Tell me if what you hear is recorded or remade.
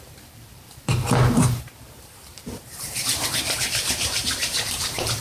remade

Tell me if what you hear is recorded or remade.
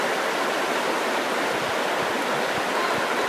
recorded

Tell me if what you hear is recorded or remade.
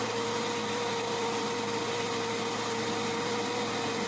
recorded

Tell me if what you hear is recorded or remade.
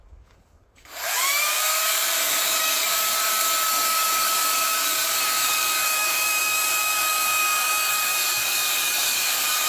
remade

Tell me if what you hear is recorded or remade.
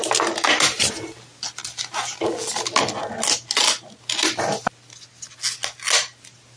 recorded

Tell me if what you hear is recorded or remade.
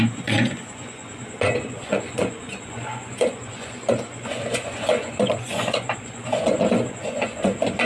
remade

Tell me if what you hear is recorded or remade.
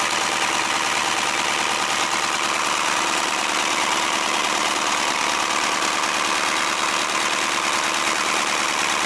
recorded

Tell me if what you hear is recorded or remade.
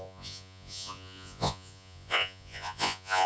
remade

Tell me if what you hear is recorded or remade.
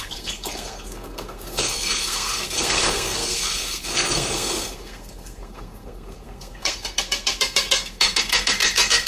remade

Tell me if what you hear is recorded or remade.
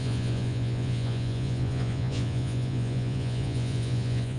remade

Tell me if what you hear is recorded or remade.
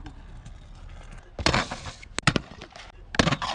recorded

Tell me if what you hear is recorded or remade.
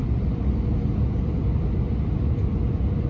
recorded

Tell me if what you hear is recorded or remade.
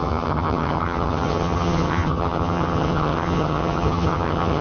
remade